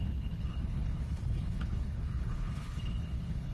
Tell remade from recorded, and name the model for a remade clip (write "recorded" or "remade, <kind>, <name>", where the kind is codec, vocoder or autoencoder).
remade, codec, HILCodec